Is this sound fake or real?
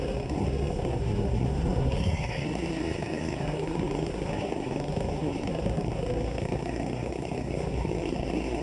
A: fake